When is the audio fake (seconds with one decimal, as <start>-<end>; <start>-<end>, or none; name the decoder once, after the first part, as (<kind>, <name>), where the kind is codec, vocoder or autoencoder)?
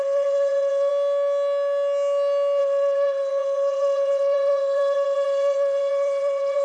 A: 0.0-0.9 (vocoder, BigVGAN v2); 2.6-6.6